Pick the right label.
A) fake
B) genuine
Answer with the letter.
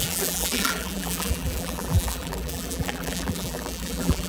A